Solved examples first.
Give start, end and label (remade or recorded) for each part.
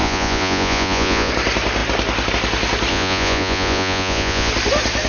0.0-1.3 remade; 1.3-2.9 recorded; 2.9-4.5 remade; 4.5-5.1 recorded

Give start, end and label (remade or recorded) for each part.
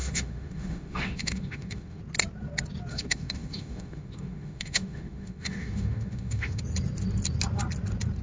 0.0-2.0 remade; 2.0-2.9 recorded; 2.9-6.6 remade; 6.6-8.2 recorded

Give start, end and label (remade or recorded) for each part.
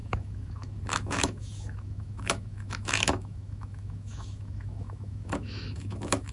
0.0-6.3 remade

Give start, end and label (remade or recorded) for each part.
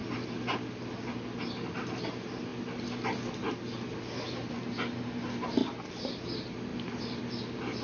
0.0-7.8 recorded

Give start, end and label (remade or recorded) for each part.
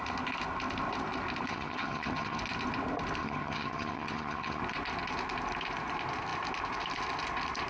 0.0-1.5 recorded; 1.5-2.4 remade; 2.4-3.2 recorded; 3.2-4.6 remade; 4.6-7.7 recorded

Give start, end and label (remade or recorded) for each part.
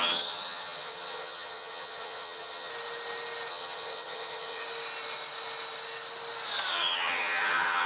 0.0-2.7 remade; 2.7-3.5 recorded; 3.5-4.6 remade; 4.6-6.7 recorded; 6.7-7.9 remade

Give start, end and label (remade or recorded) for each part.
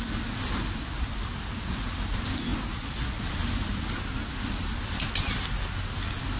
0.0-6.4 recorded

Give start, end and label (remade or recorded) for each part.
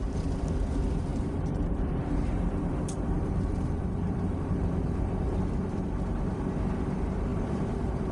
0.0-1.1 recorded; 1.1-4.8 remade; 4.8-7.3 recorded; 7.3-8.1 remade